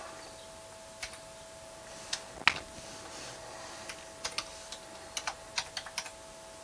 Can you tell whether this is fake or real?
real